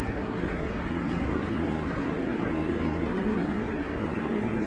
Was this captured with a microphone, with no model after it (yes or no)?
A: no